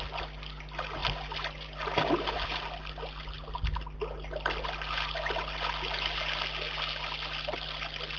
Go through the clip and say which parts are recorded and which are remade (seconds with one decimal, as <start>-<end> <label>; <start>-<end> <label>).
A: 0.0-8.2 recorded